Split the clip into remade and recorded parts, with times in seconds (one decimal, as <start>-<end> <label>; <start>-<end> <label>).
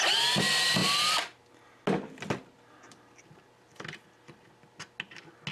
0.0-5.5 recorded